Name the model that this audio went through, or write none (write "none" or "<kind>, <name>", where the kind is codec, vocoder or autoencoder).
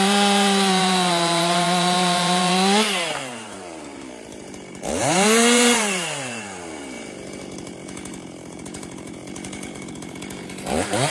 vocoder, BigVGAN v2